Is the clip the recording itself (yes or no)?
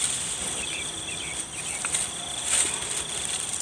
yes